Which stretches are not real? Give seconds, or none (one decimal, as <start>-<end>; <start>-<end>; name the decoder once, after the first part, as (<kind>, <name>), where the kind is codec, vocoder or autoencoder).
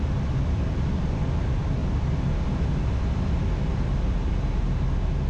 none